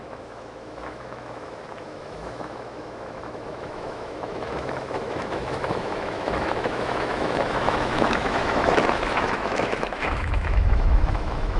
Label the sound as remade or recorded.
remade